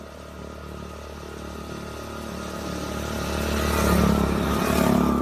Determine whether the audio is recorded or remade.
recorded